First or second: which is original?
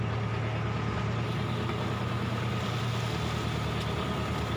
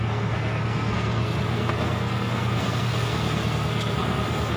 first